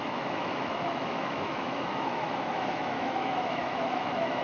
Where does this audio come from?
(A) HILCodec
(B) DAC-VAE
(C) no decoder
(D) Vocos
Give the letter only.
B